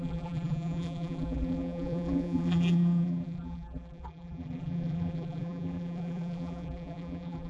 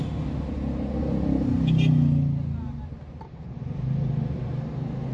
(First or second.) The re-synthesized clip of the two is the first